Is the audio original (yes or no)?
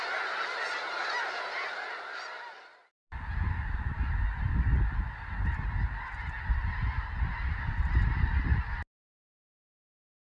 yes